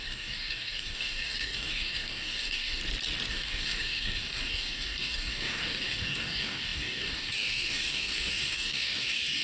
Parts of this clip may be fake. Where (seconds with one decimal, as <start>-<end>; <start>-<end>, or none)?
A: 0.0-2.8; 3.3-9.4